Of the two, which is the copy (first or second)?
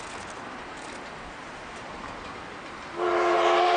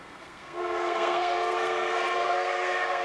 second